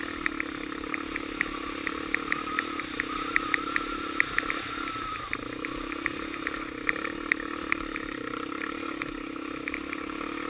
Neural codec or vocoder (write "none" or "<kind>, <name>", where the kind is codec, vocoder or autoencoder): none